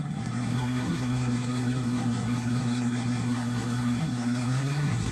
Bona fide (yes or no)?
no